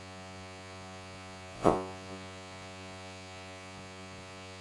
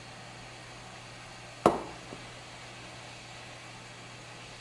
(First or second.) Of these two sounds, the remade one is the first